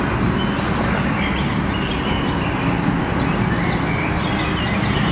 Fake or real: real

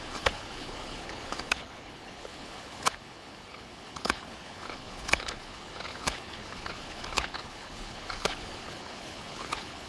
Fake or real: fake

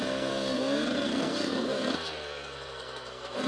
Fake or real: fake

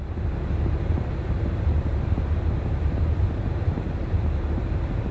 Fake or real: fake